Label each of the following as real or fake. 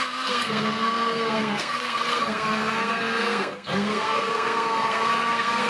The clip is fake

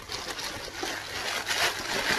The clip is real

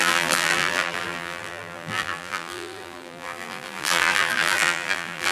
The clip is fake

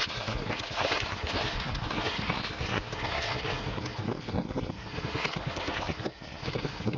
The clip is fake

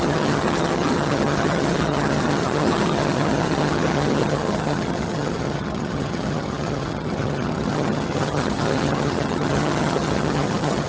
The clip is fake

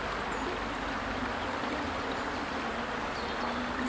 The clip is real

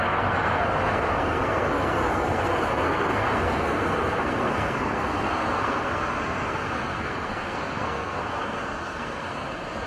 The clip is fake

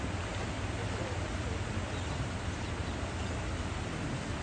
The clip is real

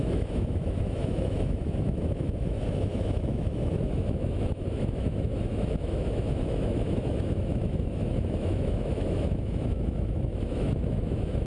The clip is fake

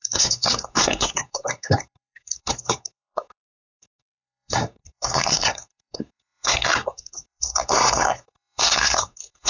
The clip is fake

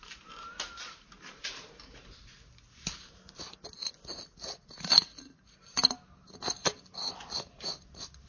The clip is real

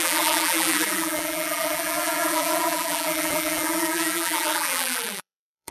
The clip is fake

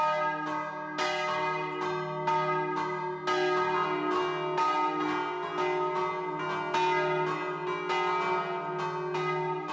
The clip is real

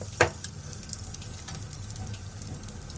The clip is real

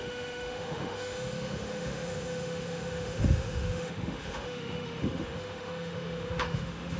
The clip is fake